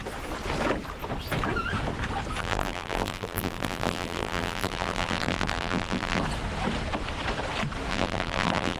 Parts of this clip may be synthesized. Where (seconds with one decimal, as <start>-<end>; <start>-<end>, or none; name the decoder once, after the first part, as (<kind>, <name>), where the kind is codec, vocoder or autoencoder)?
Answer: 2.4-6.2 (vocoder, BigVGAN v2); 7.9-8.8